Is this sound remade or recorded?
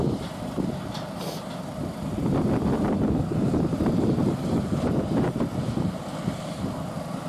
remade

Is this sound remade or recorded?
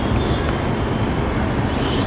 recorded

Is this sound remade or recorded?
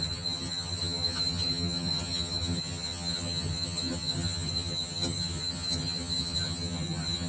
remade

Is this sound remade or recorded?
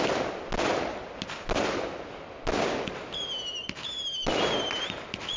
recorded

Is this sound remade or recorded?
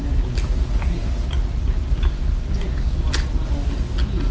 recorded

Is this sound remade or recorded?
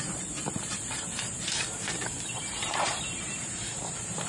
remade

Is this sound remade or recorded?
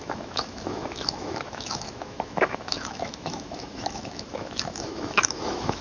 remade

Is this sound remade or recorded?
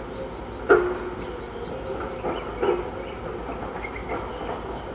recorded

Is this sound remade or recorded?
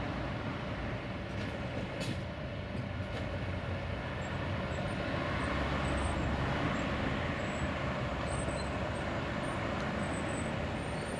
recorded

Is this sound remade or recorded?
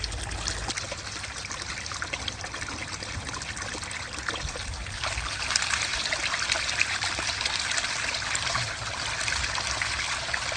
recorded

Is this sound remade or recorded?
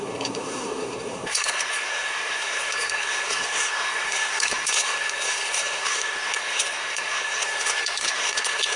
remade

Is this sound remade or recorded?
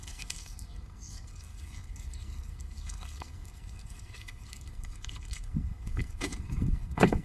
remade